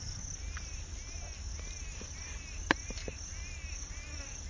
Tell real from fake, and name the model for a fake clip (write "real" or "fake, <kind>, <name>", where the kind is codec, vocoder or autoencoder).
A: real